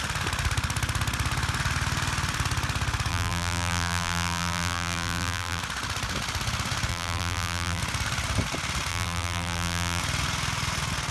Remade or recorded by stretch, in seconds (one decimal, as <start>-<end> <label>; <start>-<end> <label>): 0.0-3.1 recorded; 3.1-5.6 remade; 5.6-6.9 recorded; 6.9-7.8 remade; 7.8-8.9 recorded; 8.9-10.0 remade; 10.0-11.1 recorded